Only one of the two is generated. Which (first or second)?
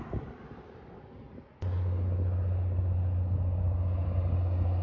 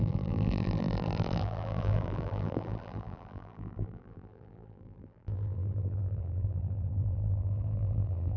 second